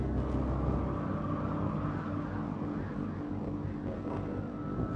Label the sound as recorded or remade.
recorded